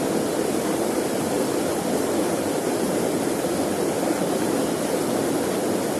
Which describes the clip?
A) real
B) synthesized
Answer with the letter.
A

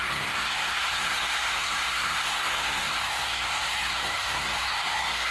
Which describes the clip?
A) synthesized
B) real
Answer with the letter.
A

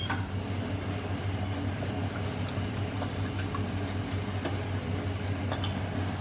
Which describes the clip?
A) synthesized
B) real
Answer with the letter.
B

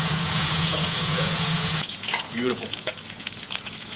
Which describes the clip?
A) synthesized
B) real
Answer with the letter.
A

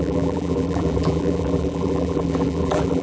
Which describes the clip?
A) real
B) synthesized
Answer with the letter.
B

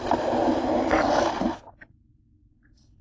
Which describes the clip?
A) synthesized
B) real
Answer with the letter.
B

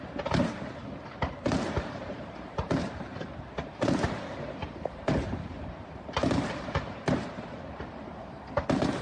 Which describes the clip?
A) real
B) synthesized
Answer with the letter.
B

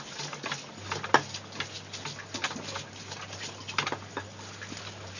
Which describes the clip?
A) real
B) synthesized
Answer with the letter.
A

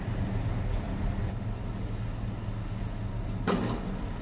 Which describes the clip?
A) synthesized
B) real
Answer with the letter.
B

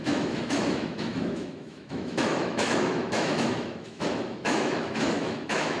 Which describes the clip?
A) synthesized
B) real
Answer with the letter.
A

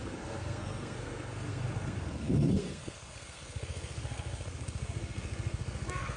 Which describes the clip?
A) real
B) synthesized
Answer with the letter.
B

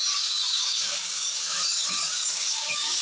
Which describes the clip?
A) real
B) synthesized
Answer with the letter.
B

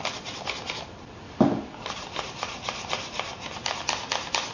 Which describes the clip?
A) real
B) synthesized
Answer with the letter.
A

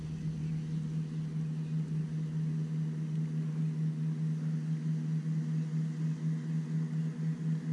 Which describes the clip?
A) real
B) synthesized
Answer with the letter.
A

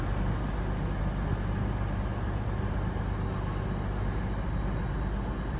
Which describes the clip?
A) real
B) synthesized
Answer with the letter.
A